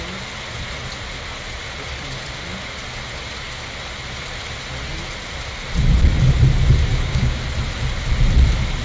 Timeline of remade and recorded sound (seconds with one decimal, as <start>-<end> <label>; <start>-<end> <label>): 0.0-6.9 recorded; 6.9-7.4 remade; 7.4-8.8 recorded